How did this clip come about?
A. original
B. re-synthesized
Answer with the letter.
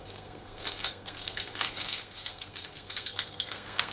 B